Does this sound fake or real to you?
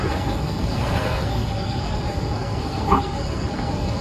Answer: fake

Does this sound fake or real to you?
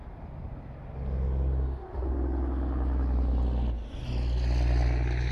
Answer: real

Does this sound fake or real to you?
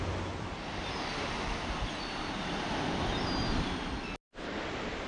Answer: real